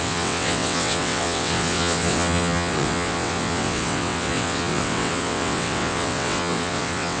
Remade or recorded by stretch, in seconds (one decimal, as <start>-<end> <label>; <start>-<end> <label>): 0.0-7.2 remade